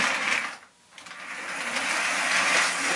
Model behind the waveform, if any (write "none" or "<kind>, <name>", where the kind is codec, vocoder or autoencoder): none